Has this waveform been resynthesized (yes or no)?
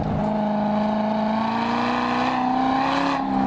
no